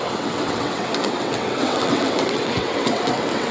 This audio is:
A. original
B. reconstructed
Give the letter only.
B